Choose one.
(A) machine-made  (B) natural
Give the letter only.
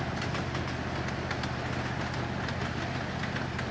B